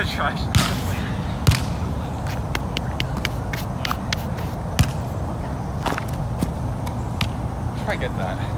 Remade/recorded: recorded